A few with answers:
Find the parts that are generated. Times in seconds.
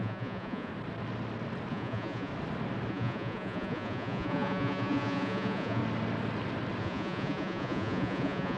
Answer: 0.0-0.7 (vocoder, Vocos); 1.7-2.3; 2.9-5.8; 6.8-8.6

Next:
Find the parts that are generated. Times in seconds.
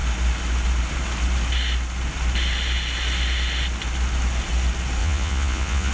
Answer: 5.0-5.9 (vocoder, Vocos)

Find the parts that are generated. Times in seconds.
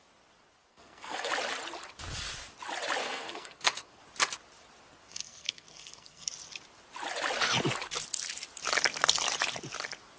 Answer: 0.7-1.3 (codec, SNAC); 3.0-4.0; 5.1-6.3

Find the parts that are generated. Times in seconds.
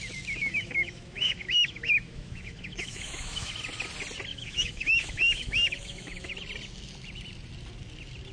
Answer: 0.4-3.5 (autoencoder, DAC-VAE); 4.3-6.3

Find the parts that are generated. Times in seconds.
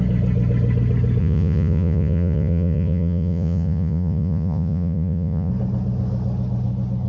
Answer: 1.2-5.5 (vocoder, Vocos)